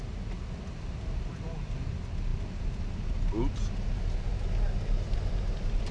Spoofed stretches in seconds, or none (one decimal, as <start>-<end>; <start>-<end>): none